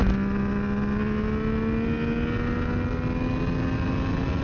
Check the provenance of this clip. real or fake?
real